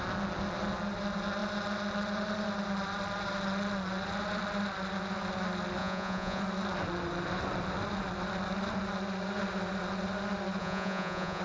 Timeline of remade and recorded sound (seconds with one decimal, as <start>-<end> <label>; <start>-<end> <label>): 0.0-5.8 recorded; 5.8-6.4 remade; 6.4-10.6 recorded; 10.6-11.4 remade